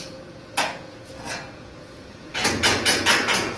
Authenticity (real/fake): fake